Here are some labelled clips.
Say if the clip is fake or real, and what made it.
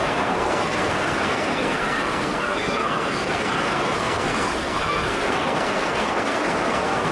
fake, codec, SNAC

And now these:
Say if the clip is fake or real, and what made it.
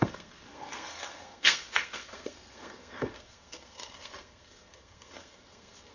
fake, codec, SNAC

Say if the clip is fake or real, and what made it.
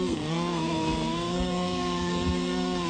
fake, codec, SNAC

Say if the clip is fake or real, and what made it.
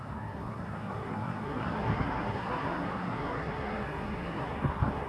fake, codec, SNAC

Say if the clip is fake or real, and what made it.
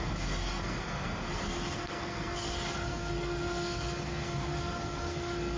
fake, codec, SNAC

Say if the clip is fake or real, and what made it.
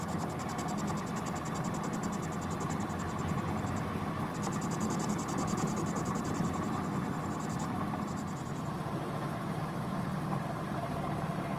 real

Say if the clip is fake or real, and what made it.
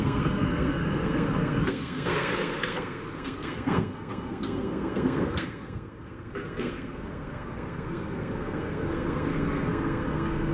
fake, codec, SNAC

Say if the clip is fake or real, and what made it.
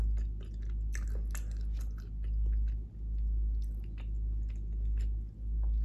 real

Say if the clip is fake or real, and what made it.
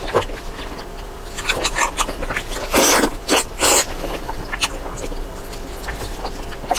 real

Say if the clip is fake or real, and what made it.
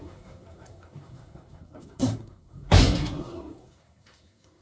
fake, codec, SNAC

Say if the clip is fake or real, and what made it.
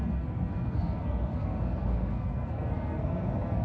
fake, codec, SNAC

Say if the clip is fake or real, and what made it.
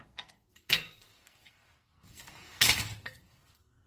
fake, codec, SNAC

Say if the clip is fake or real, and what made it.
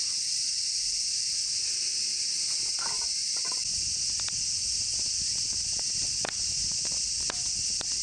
real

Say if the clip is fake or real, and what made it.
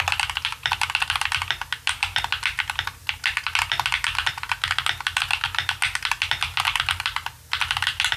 real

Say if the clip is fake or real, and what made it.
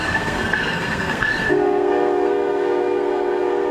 fake, codec, SNAC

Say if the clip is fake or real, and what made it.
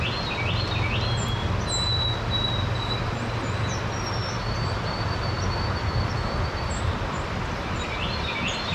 real